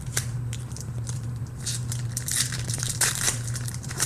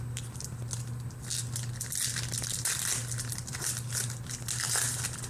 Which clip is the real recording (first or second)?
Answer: second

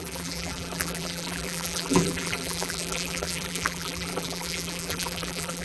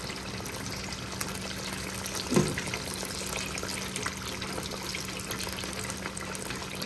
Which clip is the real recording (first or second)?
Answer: second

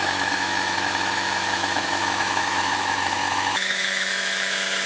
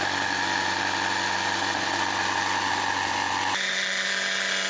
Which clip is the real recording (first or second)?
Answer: second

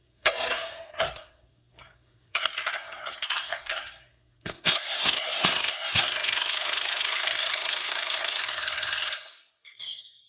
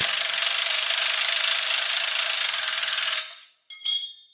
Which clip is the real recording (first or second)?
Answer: second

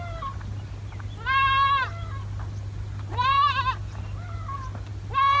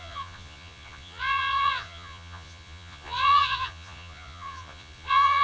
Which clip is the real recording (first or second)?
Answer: first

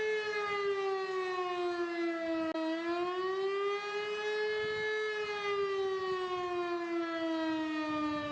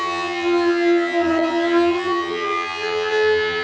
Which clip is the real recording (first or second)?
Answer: first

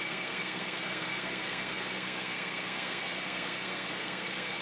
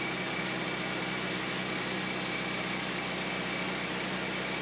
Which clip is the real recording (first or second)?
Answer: second